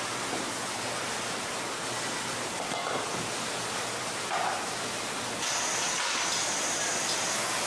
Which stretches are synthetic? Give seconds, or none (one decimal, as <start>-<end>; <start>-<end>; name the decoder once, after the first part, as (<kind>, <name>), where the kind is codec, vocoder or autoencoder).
none